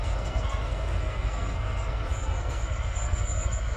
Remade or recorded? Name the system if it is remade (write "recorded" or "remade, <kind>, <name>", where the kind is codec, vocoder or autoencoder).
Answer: remade, codec, SNAC